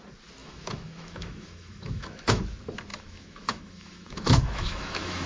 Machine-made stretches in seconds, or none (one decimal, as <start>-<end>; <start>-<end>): 0.4-2.4; 2.9-5.3